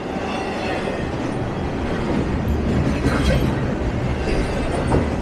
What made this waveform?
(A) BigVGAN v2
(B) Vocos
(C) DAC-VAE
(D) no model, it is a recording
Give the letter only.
D